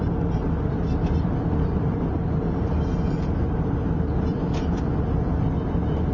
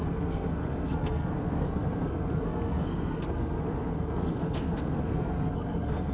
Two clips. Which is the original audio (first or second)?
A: first